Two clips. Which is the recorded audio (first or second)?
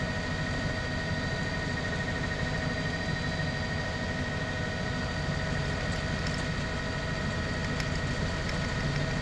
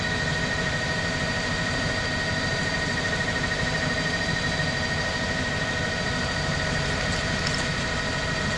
first